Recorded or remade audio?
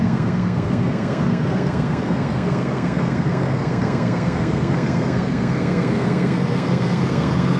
remade